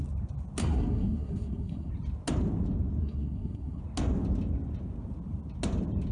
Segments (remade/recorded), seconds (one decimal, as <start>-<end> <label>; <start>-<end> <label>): 0.0-0.6 recorded; 0.6-1.9 remade; 1.9-3.0 recorded; 3.0-3.8 remade; 3.8-6.1 recorded